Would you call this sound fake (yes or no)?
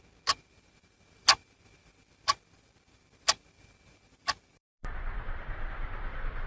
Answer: yes